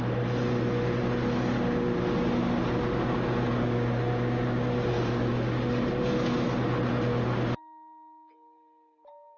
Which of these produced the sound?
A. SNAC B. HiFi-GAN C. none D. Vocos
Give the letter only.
C